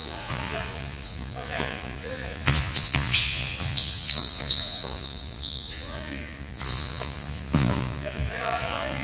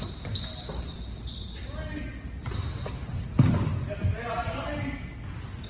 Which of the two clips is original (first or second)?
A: second